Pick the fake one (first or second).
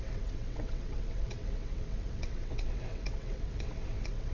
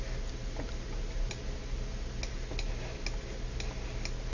first